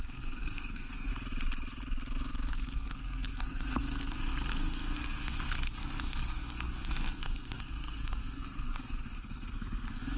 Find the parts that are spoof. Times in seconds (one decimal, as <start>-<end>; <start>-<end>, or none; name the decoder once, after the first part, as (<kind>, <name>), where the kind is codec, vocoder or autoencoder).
0.0-1.1 (codec, SNAC); 2.5-10.2